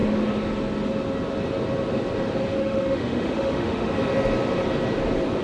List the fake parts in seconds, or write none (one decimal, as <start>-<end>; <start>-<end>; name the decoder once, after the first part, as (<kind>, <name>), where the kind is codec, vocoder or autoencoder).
2.6-3.9 (autoencoder, DAC-VAE)